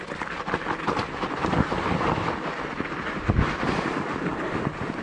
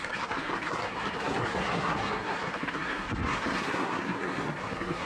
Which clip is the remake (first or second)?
second